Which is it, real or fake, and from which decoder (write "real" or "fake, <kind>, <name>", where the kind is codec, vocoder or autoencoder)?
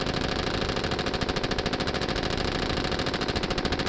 real